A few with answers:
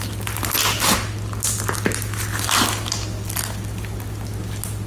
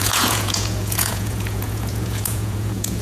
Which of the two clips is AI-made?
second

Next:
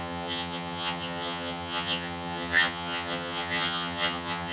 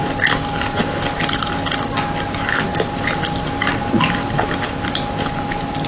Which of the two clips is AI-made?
first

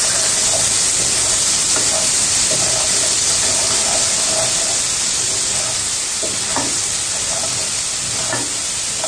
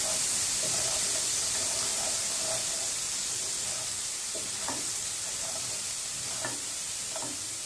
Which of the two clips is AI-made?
second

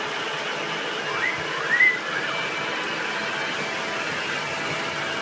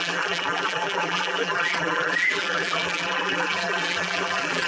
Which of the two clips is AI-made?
second